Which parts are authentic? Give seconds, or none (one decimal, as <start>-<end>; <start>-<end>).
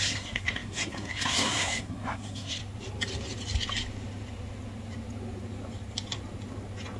2.6-7.0